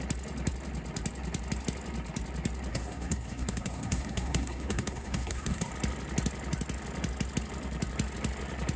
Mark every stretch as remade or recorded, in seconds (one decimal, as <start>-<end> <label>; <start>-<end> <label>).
0.0-2.7 recorded; 2.7-5.7 remade; 5.7-8.8 recorded